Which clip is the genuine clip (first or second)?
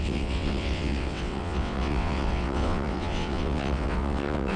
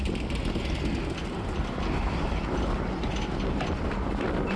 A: second